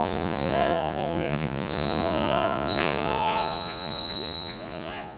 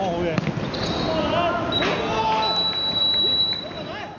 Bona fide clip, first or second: second